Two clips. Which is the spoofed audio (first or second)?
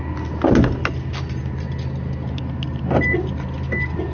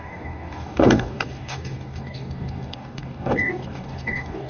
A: second